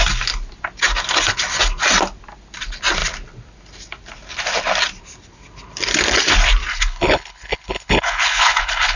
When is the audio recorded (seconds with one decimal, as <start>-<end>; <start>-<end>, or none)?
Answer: 0.0-6.7